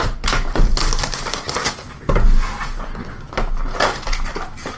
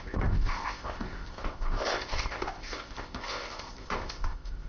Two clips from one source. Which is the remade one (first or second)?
second